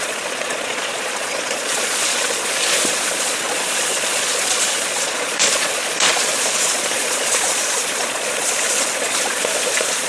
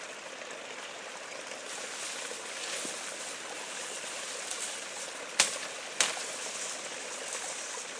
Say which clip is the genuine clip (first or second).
second